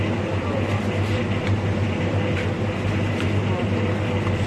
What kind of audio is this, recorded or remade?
recorded